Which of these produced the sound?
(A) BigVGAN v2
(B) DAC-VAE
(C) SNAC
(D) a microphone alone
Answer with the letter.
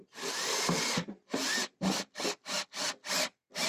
D